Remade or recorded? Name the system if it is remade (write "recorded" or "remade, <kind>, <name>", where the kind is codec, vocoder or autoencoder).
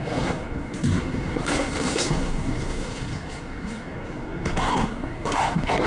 remade, codec, SNAC